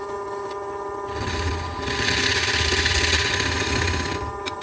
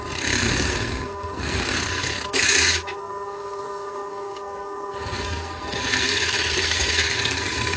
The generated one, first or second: second